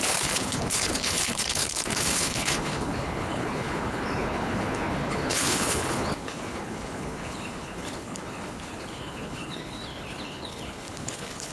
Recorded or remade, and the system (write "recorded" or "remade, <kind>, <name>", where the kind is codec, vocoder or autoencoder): remade, codec, HILCodec